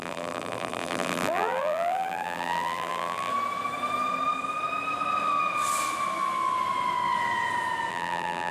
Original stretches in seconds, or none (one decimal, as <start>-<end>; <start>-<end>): 3.3-7.9